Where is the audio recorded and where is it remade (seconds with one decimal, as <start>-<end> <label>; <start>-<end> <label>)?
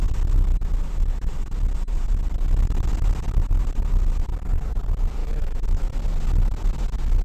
0.0-5.2 recorded; 5.2-5.8 remade; 5.8-7.2 recorded